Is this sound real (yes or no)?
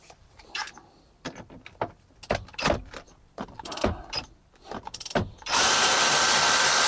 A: no